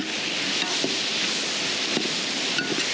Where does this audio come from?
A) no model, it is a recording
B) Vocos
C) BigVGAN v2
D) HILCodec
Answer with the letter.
A